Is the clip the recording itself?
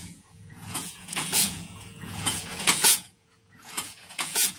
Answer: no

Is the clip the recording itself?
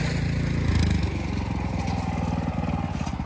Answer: yes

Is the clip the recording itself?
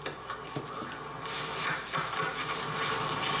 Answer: yes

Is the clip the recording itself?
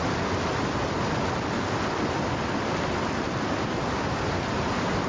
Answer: yes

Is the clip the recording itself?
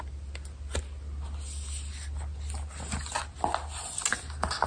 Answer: yes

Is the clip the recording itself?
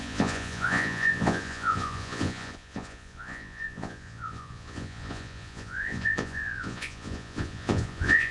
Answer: no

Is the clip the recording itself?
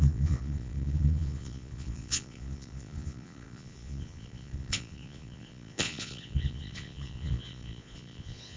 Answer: no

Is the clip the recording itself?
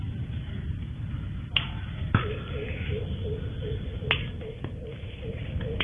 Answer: yes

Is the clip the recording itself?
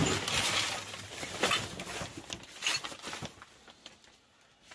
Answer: yes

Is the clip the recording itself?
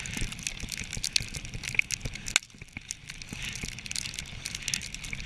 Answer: yes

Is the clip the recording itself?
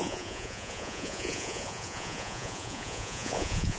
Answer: no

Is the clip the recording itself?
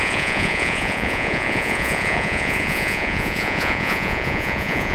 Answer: no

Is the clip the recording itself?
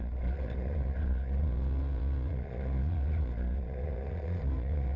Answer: no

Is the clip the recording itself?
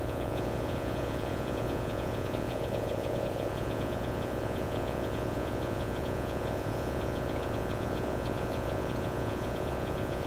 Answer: no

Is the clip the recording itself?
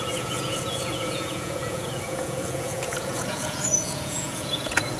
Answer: no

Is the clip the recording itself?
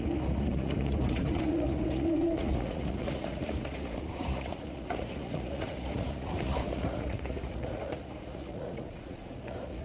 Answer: no